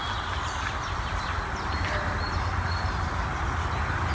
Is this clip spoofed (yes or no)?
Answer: no